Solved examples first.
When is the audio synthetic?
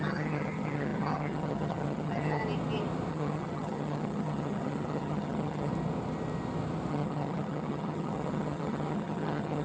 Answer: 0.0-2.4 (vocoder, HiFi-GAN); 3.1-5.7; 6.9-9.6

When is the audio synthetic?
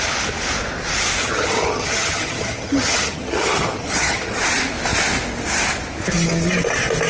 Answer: 1.2-4.4 (vocoder, HiFi-GAN)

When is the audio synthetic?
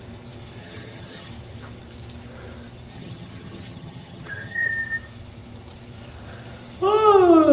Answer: 0.6-1.3 (vocoder, HiFi-GAN); 2.9-4.7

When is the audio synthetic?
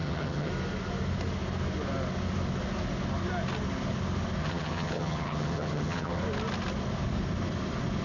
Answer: 0.0-0.5 (vocoder, HiFi-GAN); 4.4-6.2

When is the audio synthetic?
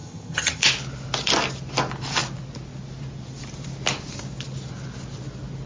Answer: 0.0-0.6 (vocoder, HiFi-GAN)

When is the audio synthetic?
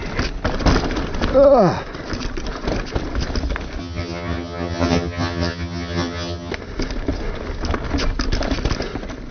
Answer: 3.8-6.5 (vocoder, HiFi-GAN)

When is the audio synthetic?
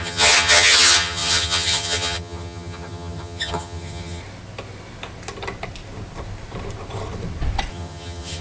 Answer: 0.0-4.2 (vocoder, HiFi-GAN); 7.7-8.4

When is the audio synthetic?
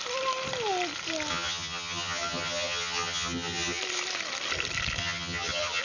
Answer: 1.3-3.8 (vocoder, HiFi-GAN); 5.0-5.8